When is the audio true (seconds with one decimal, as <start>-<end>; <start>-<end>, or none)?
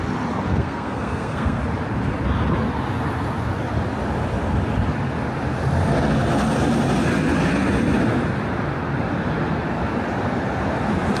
0.0-0.5; 1.6-11.2